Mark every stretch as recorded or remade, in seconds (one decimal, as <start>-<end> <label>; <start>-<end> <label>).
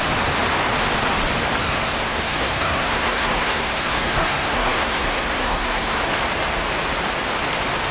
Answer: 0.0-1.6 recorded; 1.6-6.0 remade; 6.0-7.9 recorded